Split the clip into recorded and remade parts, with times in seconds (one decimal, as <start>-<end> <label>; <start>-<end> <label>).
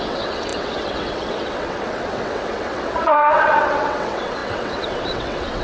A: 0.0-5.6 remade